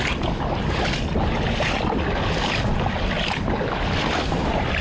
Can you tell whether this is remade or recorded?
recorded